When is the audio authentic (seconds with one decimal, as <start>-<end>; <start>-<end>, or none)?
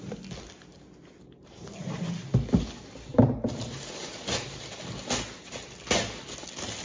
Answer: 0.0-0.7; 1.9-3.1; 4.8-6.8